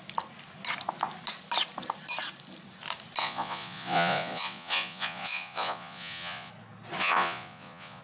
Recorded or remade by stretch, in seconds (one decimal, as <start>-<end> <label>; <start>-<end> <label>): 0.0-3.2 recorded; 3.2-6.5 remade; 6.5-7.0 recorded; 7.0-8.0 remade